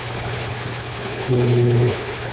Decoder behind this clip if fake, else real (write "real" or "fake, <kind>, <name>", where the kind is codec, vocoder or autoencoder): fake, codec, HILCodec